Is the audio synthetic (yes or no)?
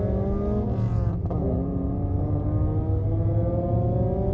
no